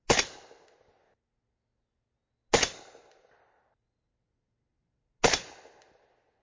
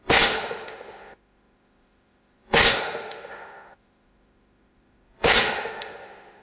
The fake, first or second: second